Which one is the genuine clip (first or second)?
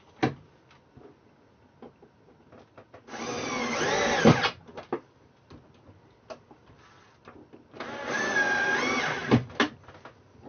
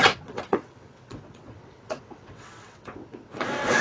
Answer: first